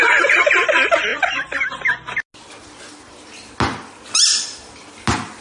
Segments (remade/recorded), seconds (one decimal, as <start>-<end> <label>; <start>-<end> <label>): 0.0-5.4 recorded